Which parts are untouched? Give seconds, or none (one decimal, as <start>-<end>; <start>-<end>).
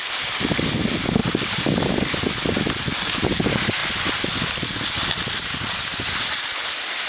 0.0-7.1